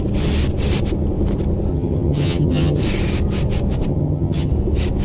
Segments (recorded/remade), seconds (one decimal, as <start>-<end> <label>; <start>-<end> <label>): 0.0-1.7 recorded; 1.7-2.8 remade; 2.8-3.9 recorded; 3.9-4.5 remade; 4.5-5.0 recorded